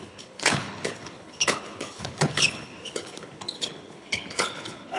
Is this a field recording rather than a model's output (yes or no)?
no